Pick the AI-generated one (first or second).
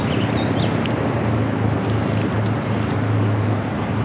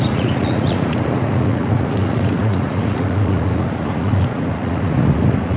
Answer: second